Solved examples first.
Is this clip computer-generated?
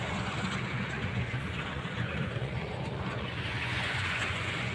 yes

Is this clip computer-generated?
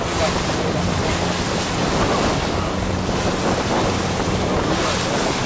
no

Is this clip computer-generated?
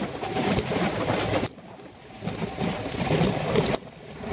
no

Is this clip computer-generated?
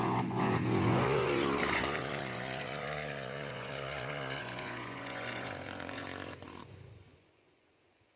yes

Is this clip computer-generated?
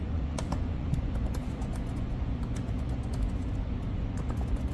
yes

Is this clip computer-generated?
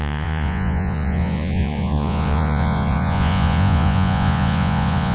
yes